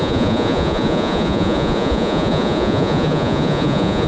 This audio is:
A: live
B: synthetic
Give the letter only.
B